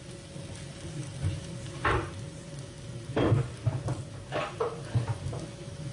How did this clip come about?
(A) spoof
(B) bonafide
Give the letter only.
B